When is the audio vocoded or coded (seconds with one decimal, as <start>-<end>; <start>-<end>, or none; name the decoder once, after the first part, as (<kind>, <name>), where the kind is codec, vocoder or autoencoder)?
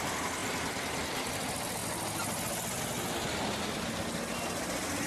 none